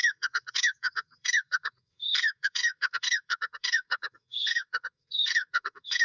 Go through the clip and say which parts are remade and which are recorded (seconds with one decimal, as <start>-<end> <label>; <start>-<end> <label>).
0.0-6.0 remade